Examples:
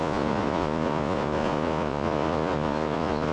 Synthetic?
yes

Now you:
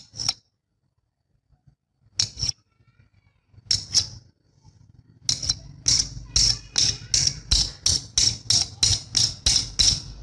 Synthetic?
no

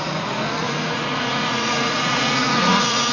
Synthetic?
yes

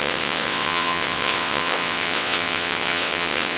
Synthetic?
yes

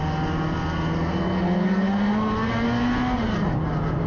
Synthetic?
no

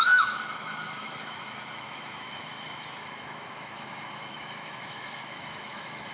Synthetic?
yes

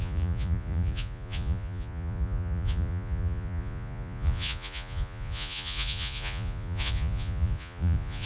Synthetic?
yes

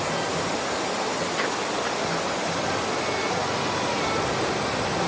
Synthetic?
no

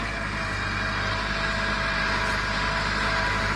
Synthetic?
no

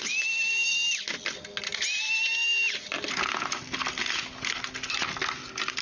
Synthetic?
no